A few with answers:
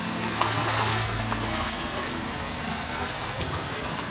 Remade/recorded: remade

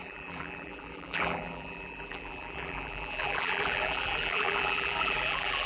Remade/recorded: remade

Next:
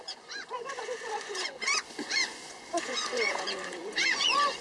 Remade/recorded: remade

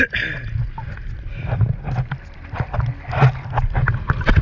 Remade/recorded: recorded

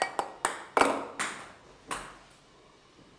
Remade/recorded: recorded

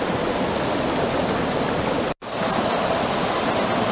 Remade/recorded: recorded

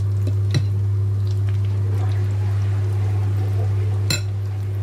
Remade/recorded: recorded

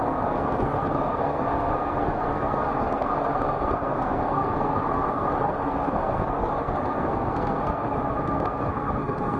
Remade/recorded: remade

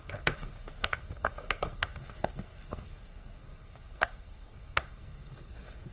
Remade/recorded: remade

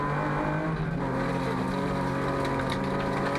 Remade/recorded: recorded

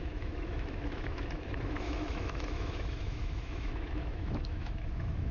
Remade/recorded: remade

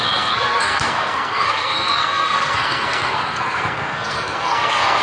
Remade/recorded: remade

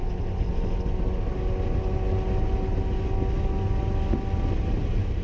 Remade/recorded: recorded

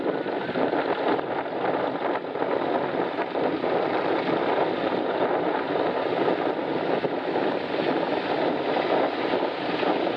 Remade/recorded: recorded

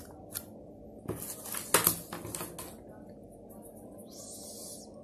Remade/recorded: recorded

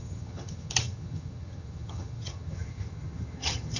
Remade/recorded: remade